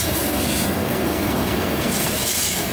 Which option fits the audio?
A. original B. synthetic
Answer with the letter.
B